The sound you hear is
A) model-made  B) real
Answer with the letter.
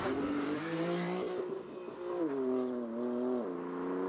A